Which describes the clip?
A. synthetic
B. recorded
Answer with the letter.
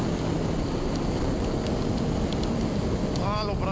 B